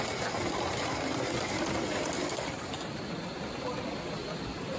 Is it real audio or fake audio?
real